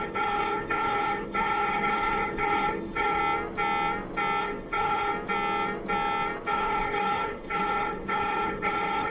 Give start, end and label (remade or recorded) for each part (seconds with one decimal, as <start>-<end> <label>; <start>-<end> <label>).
0.0-3.2 remade; 3.2-4.4 recorded; 4.4-5.1 remade; 5.1-6.5 recorded; 6.5-9.1 remade